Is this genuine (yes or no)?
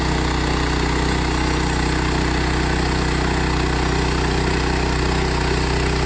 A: yes